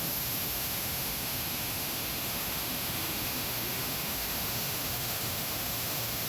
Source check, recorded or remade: remade